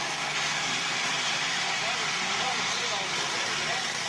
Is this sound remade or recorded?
recorded